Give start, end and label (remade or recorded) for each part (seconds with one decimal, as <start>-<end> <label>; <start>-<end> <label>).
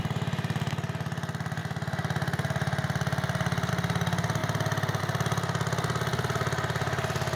0.0-7.4 recorded